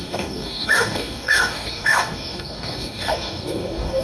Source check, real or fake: fake